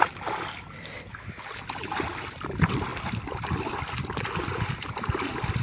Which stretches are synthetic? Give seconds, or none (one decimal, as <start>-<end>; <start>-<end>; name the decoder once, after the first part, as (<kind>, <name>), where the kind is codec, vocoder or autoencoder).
none